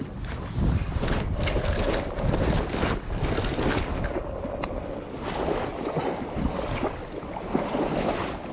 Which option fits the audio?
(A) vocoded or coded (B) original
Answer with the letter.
B